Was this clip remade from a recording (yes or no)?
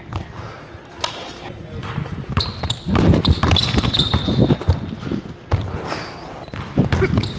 yes